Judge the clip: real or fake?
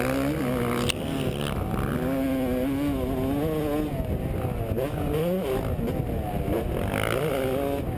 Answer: real